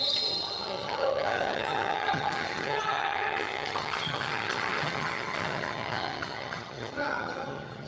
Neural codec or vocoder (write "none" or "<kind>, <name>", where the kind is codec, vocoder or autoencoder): vocoder, HiFi-GAN